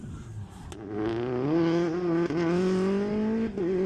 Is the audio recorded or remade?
recorded